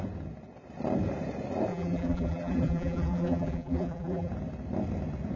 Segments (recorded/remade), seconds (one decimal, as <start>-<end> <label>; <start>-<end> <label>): 0.0-1.7 recorded; 1.7-4.3 remade; 4.3-5.4 recorded